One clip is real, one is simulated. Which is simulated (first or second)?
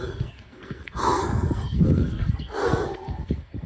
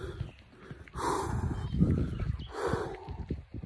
first